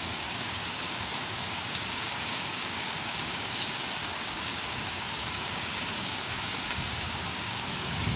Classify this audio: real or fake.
fake